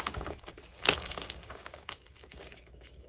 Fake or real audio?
fake